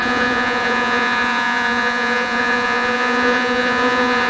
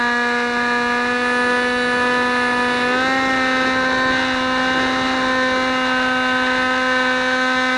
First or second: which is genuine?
second